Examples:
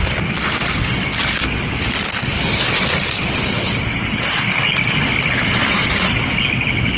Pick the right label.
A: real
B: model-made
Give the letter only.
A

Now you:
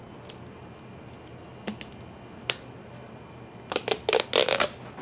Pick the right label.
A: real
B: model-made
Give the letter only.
A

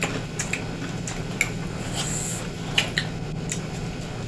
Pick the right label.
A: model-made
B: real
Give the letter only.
B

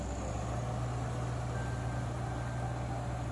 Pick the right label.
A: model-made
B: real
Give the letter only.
B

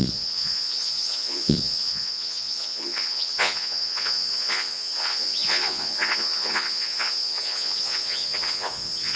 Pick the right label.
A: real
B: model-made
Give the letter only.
B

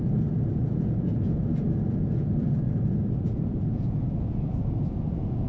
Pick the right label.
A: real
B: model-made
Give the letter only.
B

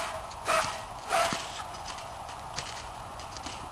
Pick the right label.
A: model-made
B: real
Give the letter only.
A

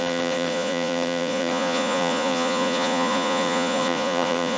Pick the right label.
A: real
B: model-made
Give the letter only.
B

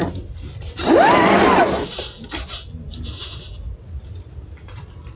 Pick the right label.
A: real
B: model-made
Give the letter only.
A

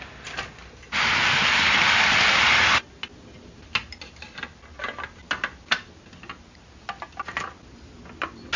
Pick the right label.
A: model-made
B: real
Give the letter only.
B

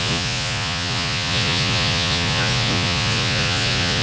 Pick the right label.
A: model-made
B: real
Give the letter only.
A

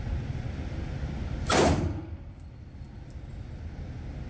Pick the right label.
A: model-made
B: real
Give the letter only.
B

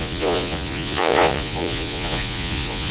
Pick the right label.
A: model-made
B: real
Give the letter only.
A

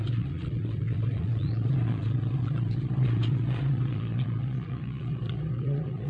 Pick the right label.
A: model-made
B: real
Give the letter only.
A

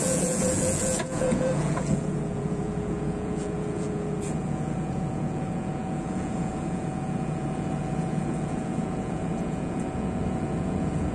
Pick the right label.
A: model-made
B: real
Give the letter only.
A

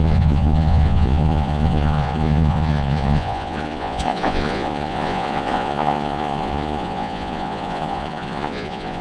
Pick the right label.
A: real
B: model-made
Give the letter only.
B